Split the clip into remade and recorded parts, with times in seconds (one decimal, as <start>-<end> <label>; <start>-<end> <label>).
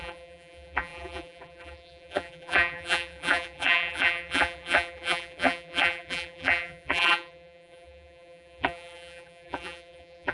0.0-10.3 remade